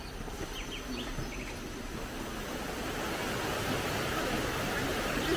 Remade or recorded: recorded